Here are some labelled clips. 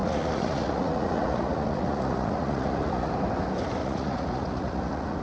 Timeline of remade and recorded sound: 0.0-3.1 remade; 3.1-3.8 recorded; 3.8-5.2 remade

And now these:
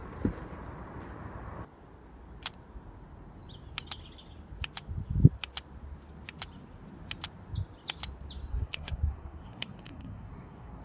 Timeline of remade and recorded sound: 0.0-8.5 recorded; 8.5-10.8 remade

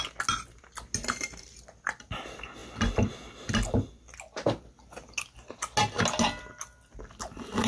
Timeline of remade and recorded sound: 0.0-7.7 recorded

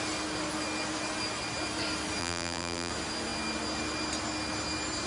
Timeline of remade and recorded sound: 0.0-2.2 recorded; 2.2-2.9 remade; 2.9-5.1 recorded